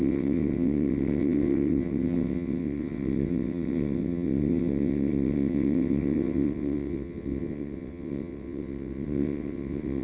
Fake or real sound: fake